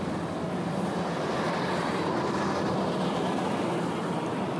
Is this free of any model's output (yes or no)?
no